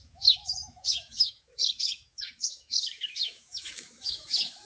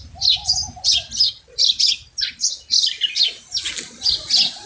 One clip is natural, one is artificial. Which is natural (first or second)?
second